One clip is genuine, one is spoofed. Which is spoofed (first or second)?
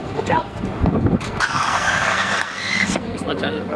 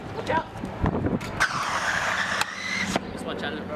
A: first